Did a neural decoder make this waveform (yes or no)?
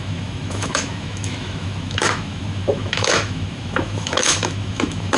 yes